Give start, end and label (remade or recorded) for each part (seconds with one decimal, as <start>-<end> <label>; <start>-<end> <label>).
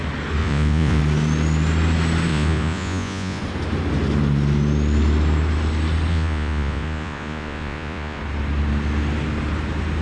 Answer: 0.0-0.4 recorded; 0.4-1.0 remade; 1.0-2.3 recorded; 2.3-3.4 remade; 3.4-6.1 recorded; 6.1-8.2 remade; 8.2-10.0 recorded